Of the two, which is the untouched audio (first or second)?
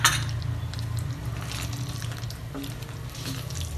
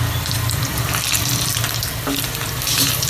first